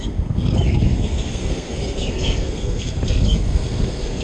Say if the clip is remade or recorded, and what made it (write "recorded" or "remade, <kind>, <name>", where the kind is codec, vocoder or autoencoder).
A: remade, codec, SNAC